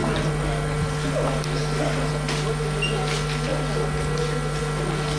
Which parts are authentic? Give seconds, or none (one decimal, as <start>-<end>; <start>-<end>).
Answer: 0.0-5.2